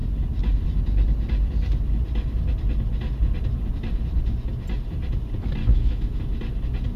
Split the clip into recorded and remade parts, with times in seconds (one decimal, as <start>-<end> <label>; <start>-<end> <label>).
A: 0.0-5.6 recorded; 5.6-6.2 remade; 6.2-7.0 recorded